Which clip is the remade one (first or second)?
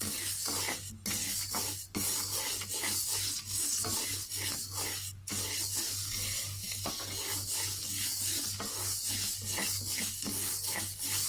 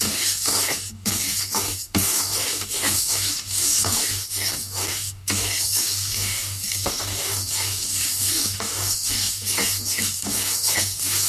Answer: second